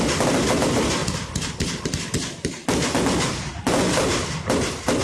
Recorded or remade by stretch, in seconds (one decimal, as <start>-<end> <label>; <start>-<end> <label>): 0.0-5.0 recorded